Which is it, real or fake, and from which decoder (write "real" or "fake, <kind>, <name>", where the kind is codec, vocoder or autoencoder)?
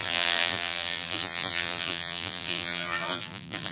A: fake, vocoder, BigVGAN v2